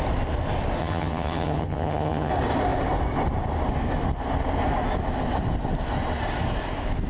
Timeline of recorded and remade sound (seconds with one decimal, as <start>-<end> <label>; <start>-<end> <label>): 0.0-0.8 recorded; 0.8-2.3 remade; 2.3-7.1 recorded

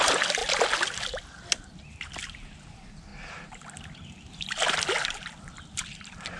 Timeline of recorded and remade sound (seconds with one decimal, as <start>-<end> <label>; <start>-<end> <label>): 0.0-6.4 recorded

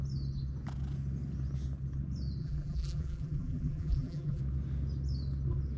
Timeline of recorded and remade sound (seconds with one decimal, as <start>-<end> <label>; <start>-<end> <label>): 0.0-2.4 recorded; 2.4-4.4 remade; 4.4-5.8 recorded

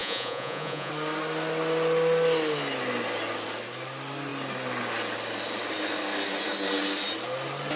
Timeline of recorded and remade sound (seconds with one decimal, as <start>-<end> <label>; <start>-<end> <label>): 0.0-0.9 remade; 0.9-7.8 recorded